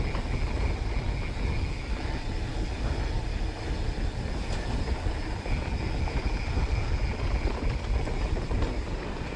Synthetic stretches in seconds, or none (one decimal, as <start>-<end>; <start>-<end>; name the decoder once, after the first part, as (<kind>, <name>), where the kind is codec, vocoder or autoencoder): none

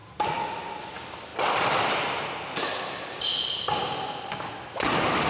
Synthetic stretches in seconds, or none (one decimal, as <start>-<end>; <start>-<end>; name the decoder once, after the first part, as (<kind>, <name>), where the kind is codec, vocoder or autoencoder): none

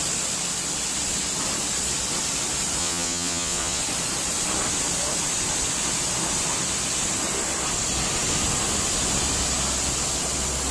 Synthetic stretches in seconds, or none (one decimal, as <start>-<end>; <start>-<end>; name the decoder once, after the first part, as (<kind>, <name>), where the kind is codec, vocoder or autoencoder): 2.8-3.8 (vocoder, Vocos)

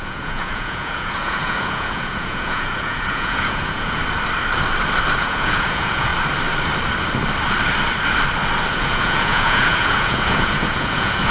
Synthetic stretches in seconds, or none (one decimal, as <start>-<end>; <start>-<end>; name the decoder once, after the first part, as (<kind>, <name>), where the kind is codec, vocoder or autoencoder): 0.0-4.0 (vocoder, Vocos); 5.2-6.1; 8.7-11.3

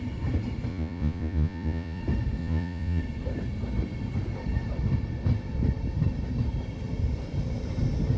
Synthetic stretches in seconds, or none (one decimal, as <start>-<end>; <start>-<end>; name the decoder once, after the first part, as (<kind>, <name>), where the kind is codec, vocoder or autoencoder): 0.7-2.0 (vocoder, Vocos); 2.4-3.0

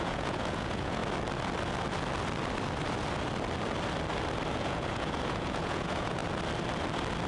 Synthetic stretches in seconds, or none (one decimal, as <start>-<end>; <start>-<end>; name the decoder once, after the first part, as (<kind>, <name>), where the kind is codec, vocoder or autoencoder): 0.0-1.0 (vocoder, Vocos); 4.5-6.2